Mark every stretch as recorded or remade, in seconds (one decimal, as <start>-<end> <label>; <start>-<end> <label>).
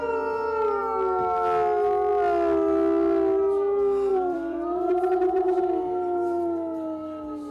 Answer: 0.0-4.1 recorded; 4.1-5.6 remade; 5.6-7.5 recorded